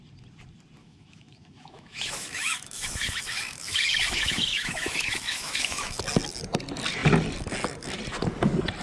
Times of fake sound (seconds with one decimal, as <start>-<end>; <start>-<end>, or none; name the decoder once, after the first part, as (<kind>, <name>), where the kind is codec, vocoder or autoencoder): 0.8-6.0 (autoencoder, DAC-VAE)